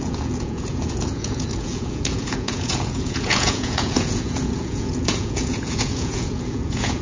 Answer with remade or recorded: remade